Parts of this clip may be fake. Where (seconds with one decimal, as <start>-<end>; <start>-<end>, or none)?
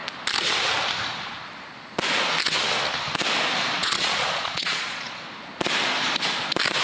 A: 3.8-5.2